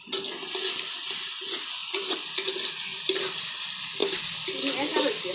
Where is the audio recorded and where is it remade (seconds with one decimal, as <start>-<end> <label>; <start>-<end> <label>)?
0.0-1.8 recorded; 1.8-2.5 remade; 2.5-2.9 recorded; 2.9-3.6 remade; 3.6-4.0 recorded; 4.0-5.3 remade